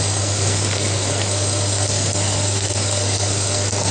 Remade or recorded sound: remade